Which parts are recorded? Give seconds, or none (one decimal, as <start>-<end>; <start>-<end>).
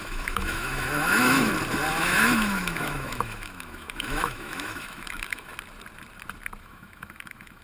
1.5-2.0; 5.5-6.6